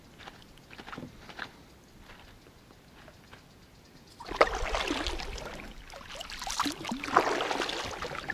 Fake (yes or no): no